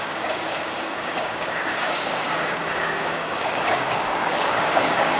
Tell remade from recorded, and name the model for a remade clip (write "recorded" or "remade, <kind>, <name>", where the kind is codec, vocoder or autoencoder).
remade, codec, DAC